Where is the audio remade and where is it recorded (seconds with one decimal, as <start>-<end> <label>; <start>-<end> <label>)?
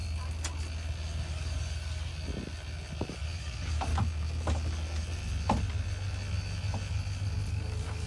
0.0-1.3 recorded; 1.3-2.1 remade; 2.1-3.1 recorded; 3.1-3.9 remade; 3.9-7.5 recorded; 7.5-8.1 remade